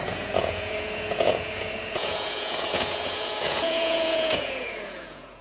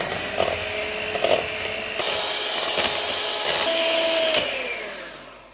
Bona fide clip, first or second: second